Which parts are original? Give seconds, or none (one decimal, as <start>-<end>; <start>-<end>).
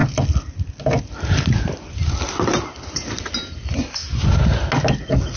0.0-5.4